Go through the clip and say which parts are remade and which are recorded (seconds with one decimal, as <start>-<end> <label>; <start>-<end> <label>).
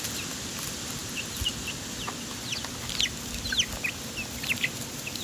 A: 0.0-5.2 recorded